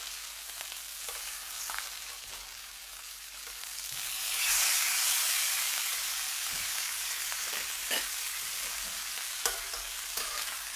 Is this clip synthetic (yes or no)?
yes